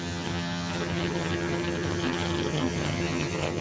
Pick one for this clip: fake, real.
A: fake